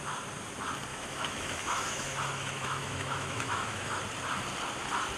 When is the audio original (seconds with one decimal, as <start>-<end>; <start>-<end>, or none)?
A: 0.0-0.9; 4.0-5.2